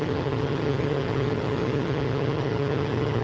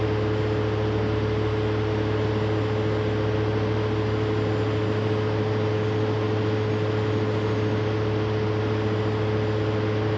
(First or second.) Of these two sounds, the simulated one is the first